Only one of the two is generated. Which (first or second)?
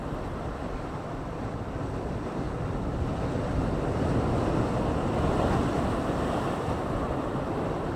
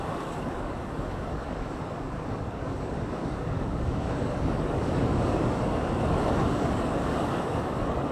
second